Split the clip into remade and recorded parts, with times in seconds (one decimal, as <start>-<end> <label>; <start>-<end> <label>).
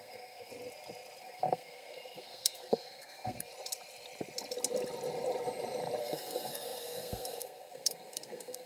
0.0-0.5 remade; 0.5-1.2 recorded; 1.2-3.5 remade; 3.5-6.0 recorded; 6.0-8.7 remade